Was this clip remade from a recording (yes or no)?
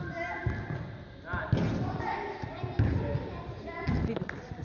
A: no